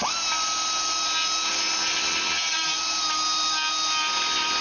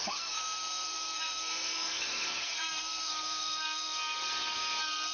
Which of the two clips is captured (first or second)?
first